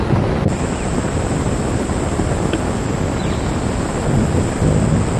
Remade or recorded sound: recorded